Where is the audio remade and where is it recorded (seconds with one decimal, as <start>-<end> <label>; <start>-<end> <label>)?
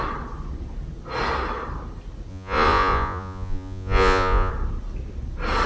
0.0-2.3 recorded; 2.3-4.5 remade; 4.5-5.7 recorded